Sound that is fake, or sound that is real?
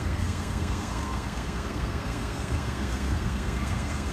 fake